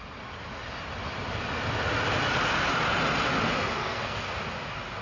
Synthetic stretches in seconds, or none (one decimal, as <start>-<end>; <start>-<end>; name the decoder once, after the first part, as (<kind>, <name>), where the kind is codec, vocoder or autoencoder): 3.8-4.4 (codec, SNAC)